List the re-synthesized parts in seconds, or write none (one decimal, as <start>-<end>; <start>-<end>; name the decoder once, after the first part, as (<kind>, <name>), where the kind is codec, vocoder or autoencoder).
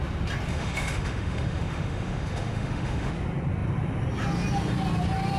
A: 0.5-3.1 (autoencoder, DAC-VAE)